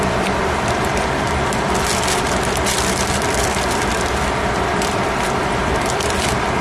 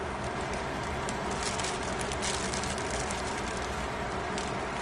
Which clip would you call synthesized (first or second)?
first